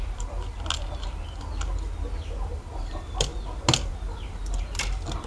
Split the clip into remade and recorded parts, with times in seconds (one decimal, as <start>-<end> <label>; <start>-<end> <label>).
0.0-5.3 recorded

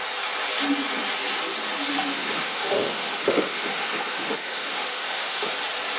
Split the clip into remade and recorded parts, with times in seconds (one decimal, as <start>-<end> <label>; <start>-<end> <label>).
0.0-1.9 recorded; 1.9-5.5 remade; 5.5-6.0 recorded

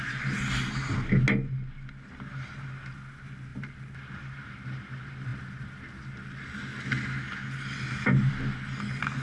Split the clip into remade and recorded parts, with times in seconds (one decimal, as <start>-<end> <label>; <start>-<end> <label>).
0.0-9.2 recorded

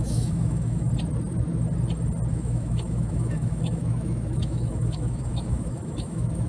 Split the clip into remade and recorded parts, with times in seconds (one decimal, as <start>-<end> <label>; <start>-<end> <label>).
0.0-0.9 remade; 0.9-2.3 recorded; 2.3-6.5 remade